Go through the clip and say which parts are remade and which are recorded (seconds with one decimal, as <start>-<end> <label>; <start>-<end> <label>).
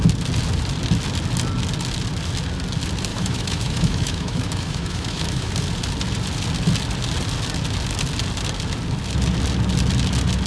0.0-3.1 recorded; 3.1-5.5 remade; 5.5-10.5 recorded